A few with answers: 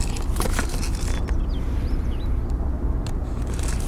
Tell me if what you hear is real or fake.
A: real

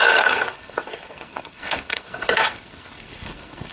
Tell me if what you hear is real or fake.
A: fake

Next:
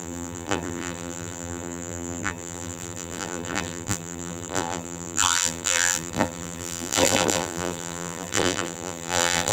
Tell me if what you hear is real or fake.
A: fake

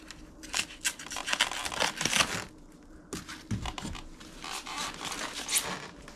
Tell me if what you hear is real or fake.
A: real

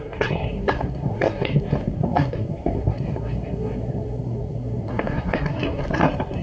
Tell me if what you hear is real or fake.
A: fake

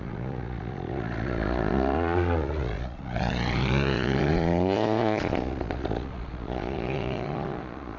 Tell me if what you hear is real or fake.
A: fake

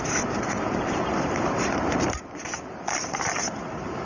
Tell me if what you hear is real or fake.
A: fake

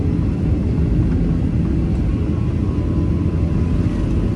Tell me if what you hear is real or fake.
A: real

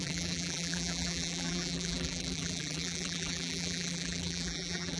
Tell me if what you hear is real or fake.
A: fake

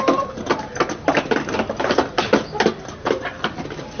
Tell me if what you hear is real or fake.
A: real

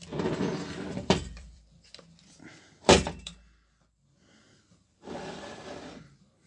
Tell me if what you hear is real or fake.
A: fake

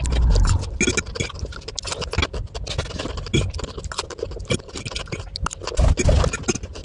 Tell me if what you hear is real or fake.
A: real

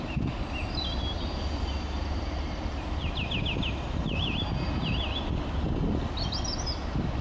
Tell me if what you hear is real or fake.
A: real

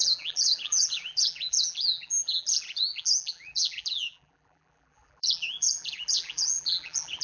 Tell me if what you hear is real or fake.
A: fake